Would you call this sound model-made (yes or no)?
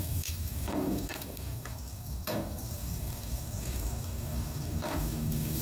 yes